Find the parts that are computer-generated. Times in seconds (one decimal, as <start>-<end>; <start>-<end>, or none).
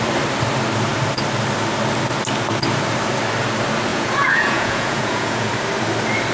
3.9-5.5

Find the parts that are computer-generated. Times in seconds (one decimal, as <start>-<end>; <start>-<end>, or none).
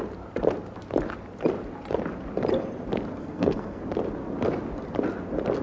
3.2-3.8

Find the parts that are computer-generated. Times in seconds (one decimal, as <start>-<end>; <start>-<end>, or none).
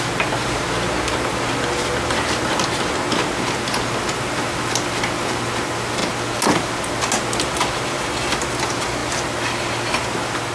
none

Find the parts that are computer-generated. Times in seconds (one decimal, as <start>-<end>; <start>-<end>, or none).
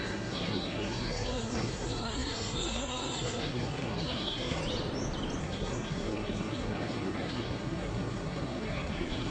0.0-4.6; 5.4-9.3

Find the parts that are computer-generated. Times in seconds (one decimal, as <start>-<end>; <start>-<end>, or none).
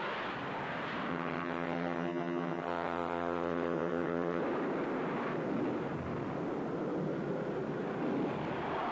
1.1-4.4